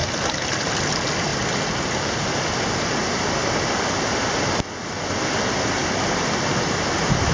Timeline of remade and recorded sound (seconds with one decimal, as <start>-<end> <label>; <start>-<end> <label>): 0.0-7.3 recorded